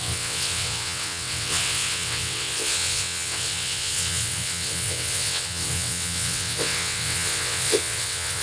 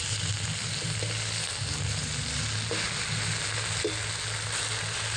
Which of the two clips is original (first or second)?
second